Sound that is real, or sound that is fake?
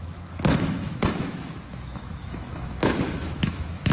fake